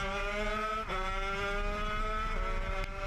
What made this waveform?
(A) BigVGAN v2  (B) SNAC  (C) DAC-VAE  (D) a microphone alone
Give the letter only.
D